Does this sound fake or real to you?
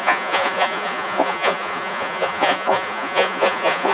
fake